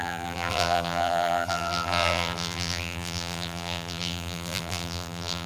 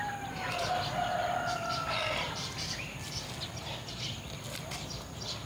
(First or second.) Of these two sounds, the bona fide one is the second